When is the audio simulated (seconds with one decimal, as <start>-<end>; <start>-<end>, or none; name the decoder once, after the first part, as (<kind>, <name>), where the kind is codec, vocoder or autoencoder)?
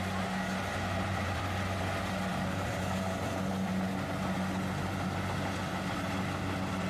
0.7-1.4 (vocoder, BigVGAN v2); 2.3-3.9